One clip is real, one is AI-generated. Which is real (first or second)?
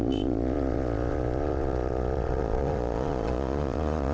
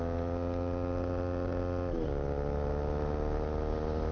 second